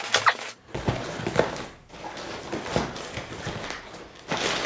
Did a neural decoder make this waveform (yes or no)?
no